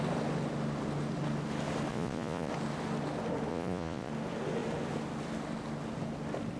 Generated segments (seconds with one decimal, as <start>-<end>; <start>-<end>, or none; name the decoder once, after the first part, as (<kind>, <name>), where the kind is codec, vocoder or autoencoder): 1.9-2.5 (vocoder, Vocos); 3.5-4.1